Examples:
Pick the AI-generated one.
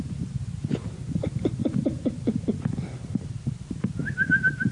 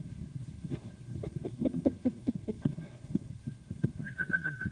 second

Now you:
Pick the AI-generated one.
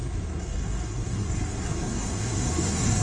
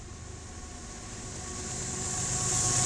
first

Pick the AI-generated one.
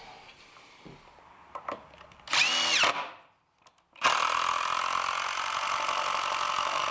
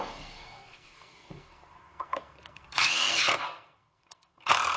second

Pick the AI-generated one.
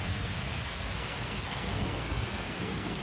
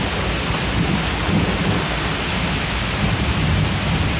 first